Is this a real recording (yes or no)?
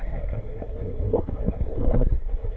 no